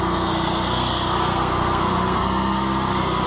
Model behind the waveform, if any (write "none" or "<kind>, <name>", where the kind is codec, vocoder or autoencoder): codec, SNAC